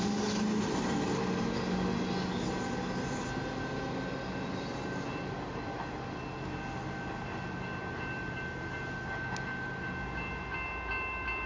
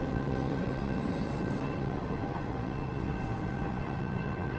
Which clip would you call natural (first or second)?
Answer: first